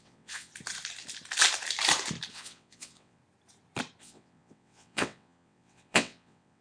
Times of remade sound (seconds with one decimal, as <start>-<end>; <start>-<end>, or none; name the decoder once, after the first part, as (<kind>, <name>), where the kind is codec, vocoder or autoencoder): 0.0-0.5 (vocoder, WaveNeXt); 2.3-3.2; 4.0-6.6